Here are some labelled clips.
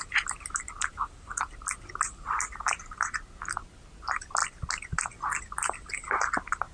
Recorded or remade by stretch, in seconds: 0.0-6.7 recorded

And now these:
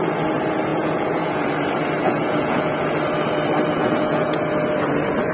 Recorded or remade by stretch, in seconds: 0.0-0.7 recorded; 0.7-1.4 remade; 1.4-2.0 recorded; 2.0-2.8 remade; 2.8-3.8 recorded; 3.8-4.4 remade; 4.4-5.3 recorded

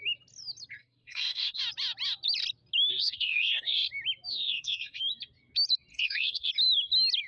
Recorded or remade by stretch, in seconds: 0.0-0.8 recorded; 0.8-1.6 remade; 1.6-2.9 recorded; 2.9-3.9 remade; 3.9-4.3 recorded; 4.3-5.0 remade; 5.0-5.9 recorded; 5.9-6.5 remade; 6.5-7.3 recorded

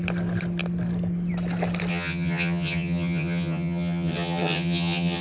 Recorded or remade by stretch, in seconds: 0.0-1.9 recorded; 1.9-5.2 remade

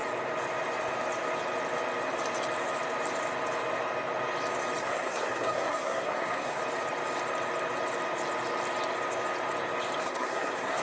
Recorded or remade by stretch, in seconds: 0.0-4.8 recorded; 4.8-6.6 remade; 6.6-10.0 recorded; 10.0-10.8 remade